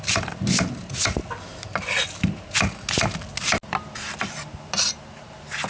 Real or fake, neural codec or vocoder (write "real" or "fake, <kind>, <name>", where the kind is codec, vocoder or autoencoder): real